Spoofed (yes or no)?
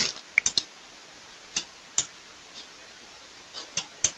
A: no